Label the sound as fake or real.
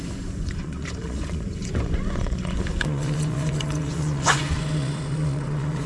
fake